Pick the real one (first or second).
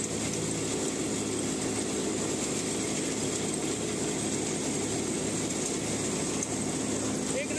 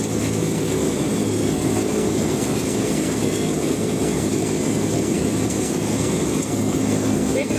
first